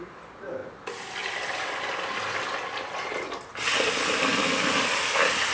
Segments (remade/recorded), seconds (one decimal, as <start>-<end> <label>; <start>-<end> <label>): 0.0-5.5 recorded